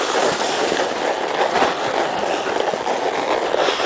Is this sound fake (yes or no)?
no